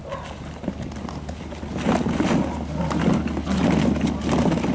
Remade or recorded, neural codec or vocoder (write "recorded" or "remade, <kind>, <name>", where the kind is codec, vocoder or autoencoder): recorded